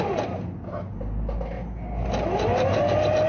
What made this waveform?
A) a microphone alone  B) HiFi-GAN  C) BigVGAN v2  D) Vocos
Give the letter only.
A